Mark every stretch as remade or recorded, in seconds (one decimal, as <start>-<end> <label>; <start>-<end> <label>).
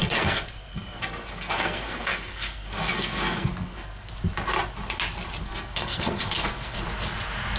0.0-4.1 remade; 4.1-5.4 recorded; 5.4-6.8 remade; 6.8-7.6 recorded